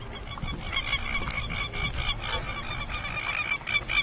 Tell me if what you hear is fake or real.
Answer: real